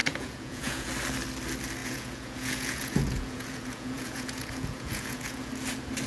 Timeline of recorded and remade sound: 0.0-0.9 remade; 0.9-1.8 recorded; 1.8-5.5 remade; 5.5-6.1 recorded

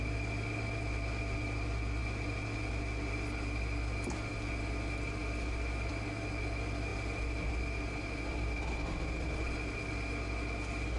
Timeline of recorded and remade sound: 0.0-11.0 recorded

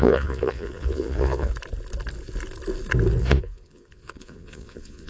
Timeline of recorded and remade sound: 0.0-1.5 remade; 1.5-3.2 recorded; 3.2-5.1 remade

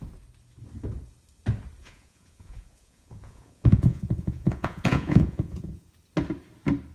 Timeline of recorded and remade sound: 0.0-1.8 recorded; 1.8-5.9 remade; 5.9-6.9 recorded

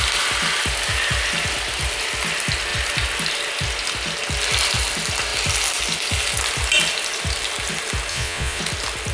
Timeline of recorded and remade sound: 0.0-8.1 recorded; 8.1-8.6 remade; 8.6-9.1 recorded

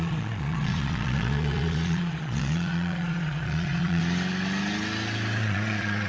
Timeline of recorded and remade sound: 0.0-4.0 remade; 4.0-5.4 recorded; 5.4-6.1 remade

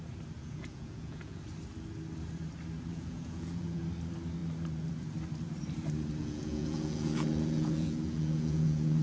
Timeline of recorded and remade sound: 0.0-0.4 recorded; 0.4-1.4 remade; 1.4-2.9 recorded; 2.9-3.8 remade; 3.8-6.2 recorded; 6.2-9.0 remade